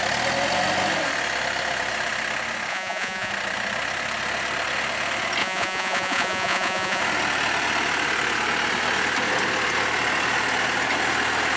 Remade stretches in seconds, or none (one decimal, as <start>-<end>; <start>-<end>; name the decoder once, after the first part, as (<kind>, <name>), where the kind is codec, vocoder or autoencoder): 2.7-3.3 (vocoder, Vocos); 5.4-7.0